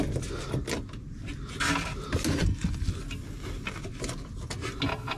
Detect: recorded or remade recorded